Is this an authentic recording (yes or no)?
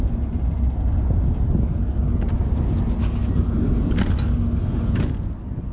yes